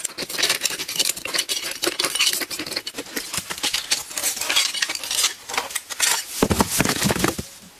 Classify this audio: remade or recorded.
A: recorded